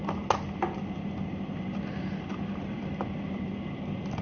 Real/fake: real